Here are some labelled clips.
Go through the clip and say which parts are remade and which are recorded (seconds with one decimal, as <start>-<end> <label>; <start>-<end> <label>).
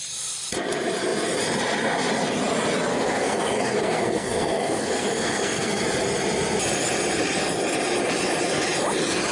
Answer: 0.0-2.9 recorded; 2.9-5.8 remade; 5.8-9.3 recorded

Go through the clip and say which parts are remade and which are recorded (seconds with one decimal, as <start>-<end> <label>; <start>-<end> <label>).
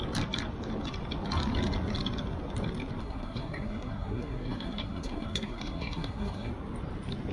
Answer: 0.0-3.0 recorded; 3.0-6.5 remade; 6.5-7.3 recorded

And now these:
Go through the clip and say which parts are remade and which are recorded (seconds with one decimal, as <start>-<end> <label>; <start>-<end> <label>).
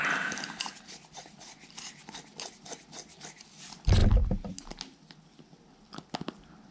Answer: 0.0-6.7 recorded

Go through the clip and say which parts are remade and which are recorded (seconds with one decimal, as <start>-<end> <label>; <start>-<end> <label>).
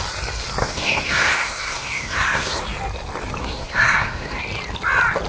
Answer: 0.0-0.6 recorded; 0.6-2.6 remade; 2.6-3.4 recorded; 3.4-4.4 remade; 4.4-5.3 recorded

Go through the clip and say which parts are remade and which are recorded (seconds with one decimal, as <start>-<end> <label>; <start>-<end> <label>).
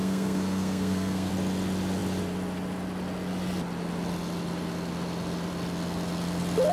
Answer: 0.0-1.3 remade; 1.3-6.7 recorded